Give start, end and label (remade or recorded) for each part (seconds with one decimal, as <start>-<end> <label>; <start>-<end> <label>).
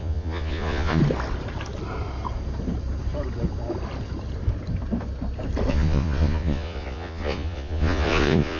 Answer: 0.0-1.0 remade; 1.0-5.7 recorded; 5.7-8.6 remade